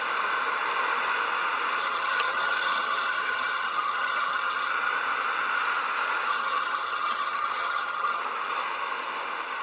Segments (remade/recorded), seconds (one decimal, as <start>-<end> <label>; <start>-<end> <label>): 0.0-1.8 recorded; 1.8-4.7 remade; 4.7-6.3 recorded; 6.3-8.2 remade; 8.2-9.6 recorded